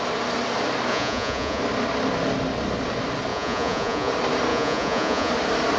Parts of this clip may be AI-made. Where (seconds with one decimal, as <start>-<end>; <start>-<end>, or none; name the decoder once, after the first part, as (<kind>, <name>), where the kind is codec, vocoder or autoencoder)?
0.9-1.6 (vocoder, Vocos); 3.3-4.1; 4.5-5.3